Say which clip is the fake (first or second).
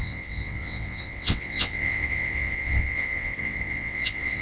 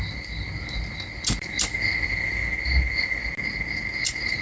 first